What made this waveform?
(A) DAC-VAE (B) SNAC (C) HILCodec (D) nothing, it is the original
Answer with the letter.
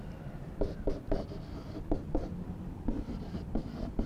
D